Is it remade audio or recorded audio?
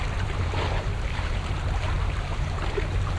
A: remade